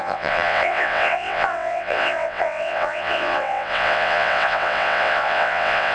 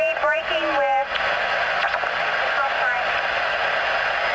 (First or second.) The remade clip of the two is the first